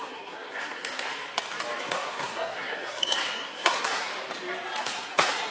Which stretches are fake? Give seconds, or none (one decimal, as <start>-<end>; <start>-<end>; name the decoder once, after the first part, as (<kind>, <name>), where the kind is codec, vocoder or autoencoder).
0.0-1.1 (codec, SNAC); 1.8-4.1; 4.8-5.5